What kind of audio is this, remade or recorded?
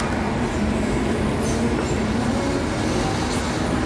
recorded